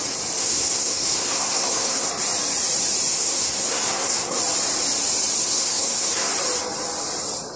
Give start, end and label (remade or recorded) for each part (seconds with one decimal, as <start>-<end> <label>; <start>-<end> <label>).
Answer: 0.0-0.4 recorded; 0.4-2.1 remade; 2.1-3.1 recorded; 3.1-4.4 remade; 4.4-5.4 recorded; 5.4-6.3 remade; 6.3-7.6 recorded